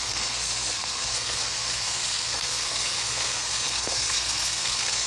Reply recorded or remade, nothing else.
remade